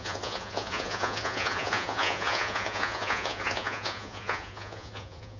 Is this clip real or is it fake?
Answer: fake